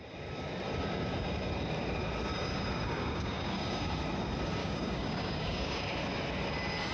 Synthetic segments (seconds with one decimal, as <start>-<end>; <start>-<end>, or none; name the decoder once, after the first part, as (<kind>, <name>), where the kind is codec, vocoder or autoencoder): 2.3-3.9 (codec, DAC); 4.6-5.8